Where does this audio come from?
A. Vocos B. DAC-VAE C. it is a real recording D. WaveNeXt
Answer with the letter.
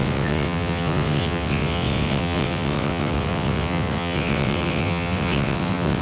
D